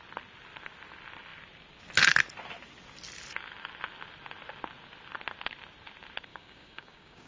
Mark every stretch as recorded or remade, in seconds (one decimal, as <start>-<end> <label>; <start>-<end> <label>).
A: 0.0-6.3 recorded; 6.3-7.3 remade